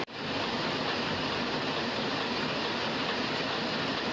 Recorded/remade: recorded